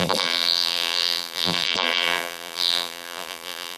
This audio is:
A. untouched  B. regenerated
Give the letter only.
B